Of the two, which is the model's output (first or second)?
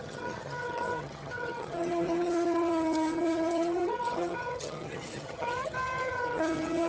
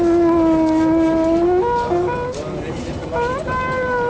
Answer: first